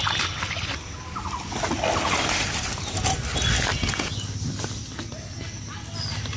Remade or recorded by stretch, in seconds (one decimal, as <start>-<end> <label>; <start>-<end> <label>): 0.0-6.4 recorded